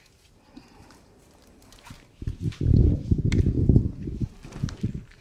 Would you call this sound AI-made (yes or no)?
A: yes